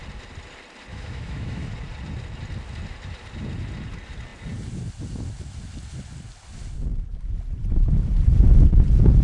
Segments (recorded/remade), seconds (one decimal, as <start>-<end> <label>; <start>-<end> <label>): 0.0-0.9 recorded; 0.9-1.7 remade; 1.7-9.2 recorded

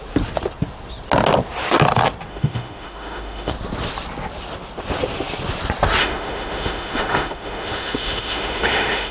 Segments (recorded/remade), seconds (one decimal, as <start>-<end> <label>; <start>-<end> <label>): 0.0-2.3 recorded; 2.3-3.5 remade; 3.5-6.0 recorded; 6.0-9.1 remade

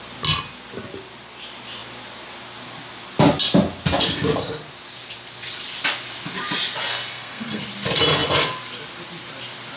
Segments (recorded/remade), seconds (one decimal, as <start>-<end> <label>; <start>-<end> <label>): 0.0-6.9 recorded; 6.9-7.6 remade; 7.6-9.8 recorded